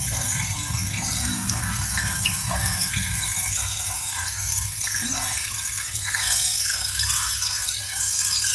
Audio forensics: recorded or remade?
remade